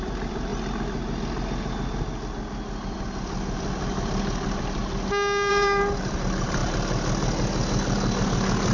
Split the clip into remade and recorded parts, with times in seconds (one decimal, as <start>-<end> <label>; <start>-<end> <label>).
0.0-0.5 remade; 0.5-4.1 recorded; 4.1-4.8 remade; 4.8-5.5 recorded; 5.5-6.6 remade; 6.6-8.2 recorded; 8.2-8.7 remade